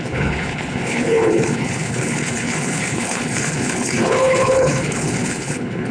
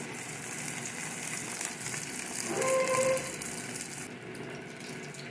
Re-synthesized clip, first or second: first